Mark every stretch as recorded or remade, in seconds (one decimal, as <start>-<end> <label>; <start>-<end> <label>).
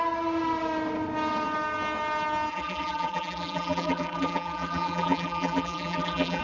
0.0-2.5 recorded; 2.5-6.4 remade